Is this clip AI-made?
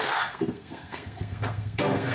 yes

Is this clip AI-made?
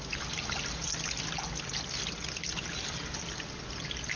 no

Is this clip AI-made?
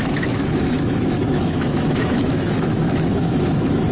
yes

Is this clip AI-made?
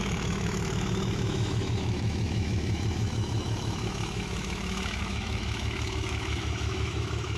yes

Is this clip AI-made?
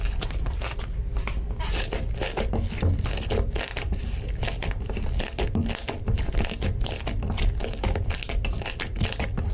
no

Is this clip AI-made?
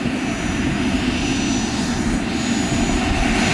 no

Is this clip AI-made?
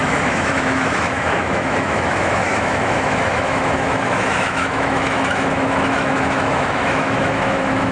yes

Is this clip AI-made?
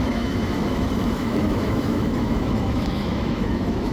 yes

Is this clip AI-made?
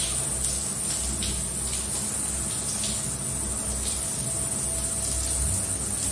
no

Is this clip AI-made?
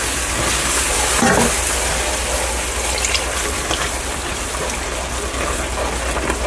no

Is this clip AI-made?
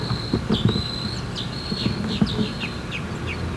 no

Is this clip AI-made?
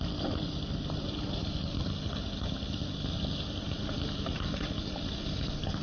yes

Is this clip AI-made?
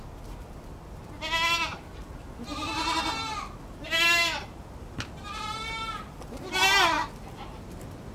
no